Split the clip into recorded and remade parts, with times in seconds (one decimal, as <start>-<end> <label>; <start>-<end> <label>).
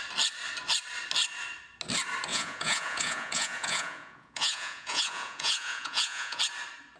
0.0-2.3 recorded; 2.3-6.4 remade; 6.4-7.0 recorded